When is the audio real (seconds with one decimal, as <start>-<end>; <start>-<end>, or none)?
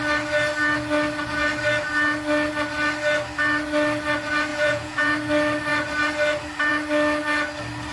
0.0-4.5; 5.1-7.9